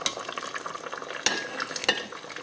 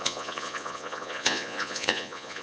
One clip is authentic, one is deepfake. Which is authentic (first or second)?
first